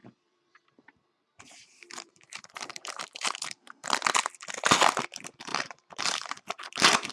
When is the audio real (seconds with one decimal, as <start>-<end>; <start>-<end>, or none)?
3.8-5.5; 6.4-7.1